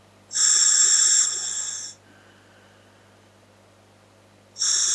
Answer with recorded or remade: recorded